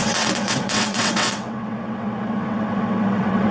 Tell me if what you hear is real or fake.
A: fake